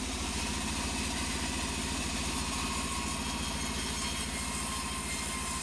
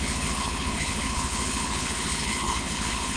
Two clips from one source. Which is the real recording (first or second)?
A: first